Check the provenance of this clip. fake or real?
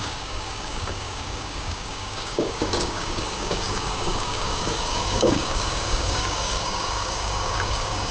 fake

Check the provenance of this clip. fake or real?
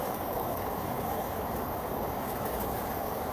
fake